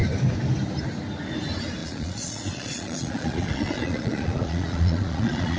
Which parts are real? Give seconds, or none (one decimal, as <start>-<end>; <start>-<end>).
0.0-1.8